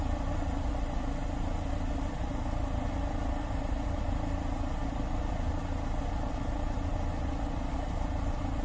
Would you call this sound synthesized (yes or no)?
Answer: no